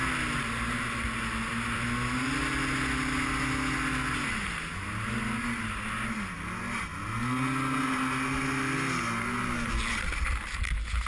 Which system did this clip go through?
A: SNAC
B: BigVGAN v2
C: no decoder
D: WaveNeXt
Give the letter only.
C